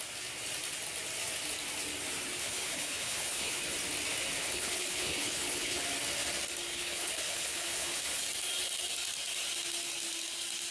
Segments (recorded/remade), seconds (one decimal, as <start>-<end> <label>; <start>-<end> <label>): 0.0-2.4 recorded; 2.4-3.6 remade; 3.6-4.4 recorded; 4.4-5.8 remade; 5.8-6.7 recorded; 6.7-8.2 remade; 8.2-10.7 recorded